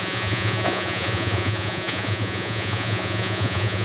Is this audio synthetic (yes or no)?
yes